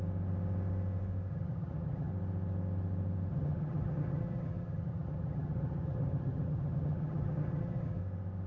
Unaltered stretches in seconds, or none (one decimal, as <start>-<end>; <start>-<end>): 0.0-1.3; 2.1-3.3; 8.0-8.5